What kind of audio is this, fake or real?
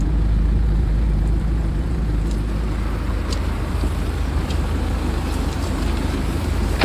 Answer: fake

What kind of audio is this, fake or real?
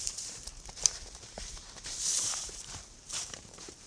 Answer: fake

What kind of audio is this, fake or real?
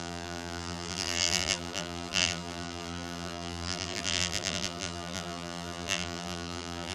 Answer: fake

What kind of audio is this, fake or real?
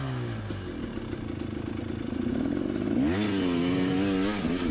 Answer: real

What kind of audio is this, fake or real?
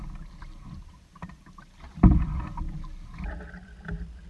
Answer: real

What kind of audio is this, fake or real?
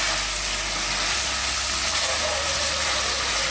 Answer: real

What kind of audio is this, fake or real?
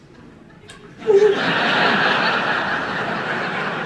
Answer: real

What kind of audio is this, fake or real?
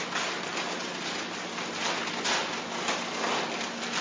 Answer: real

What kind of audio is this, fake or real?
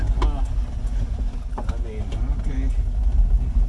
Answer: real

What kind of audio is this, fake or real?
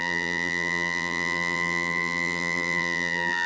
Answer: fake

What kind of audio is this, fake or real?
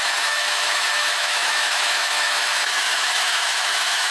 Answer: fake